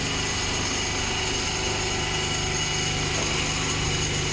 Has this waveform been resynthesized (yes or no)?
no